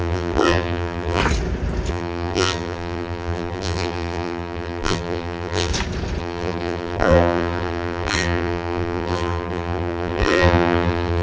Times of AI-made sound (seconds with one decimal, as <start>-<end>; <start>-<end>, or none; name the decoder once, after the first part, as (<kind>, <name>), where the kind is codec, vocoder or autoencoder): 0.0-1.2 (vocoder, BigVGAN v2); 1.9-5.7; 6.2-11.2